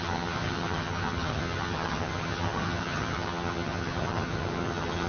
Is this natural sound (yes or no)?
no